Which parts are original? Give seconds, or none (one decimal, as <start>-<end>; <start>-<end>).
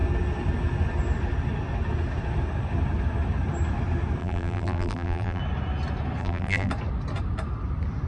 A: 0.0-4.2; 5.4-6.2; 6.7-8.1